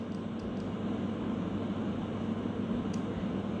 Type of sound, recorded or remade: recorded